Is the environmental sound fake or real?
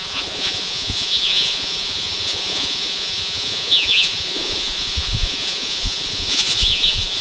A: fake